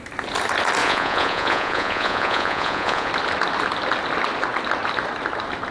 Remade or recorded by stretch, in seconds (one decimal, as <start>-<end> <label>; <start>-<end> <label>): 0.0-0.8 recorded; 0.8-3.1 remade; 3.1-5.7 recorded